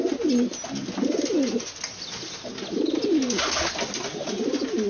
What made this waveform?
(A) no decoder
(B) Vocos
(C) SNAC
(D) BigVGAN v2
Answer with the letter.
A